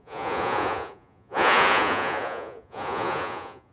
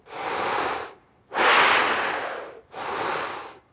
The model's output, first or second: first